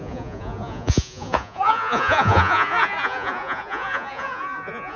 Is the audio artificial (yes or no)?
yes